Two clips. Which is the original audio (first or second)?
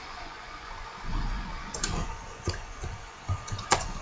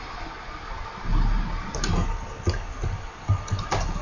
second